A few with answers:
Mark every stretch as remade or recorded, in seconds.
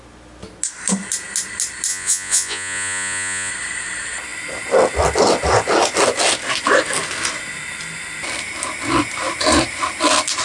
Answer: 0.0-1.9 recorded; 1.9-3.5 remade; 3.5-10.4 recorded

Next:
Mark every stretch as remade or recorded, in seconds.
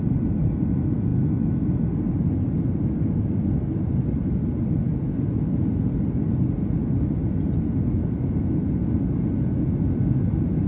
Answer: 0.0-10.7 recorded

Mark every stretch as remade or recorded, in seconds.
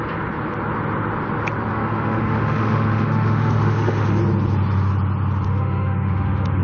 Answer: 0.0-1.7 recorded; 1.7-4.2 remade; 4.2-5.5 recorded; 5.5-6.6 remade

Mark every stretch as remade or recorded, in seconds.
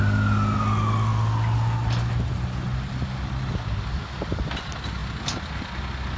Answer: 0.0-6.2 recorded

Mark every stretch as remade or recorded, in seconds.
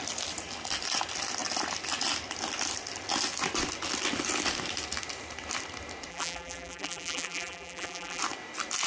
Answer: 0.0-6.1 recorded; 6.1-8.2 remade; 8.2-8.9 recorded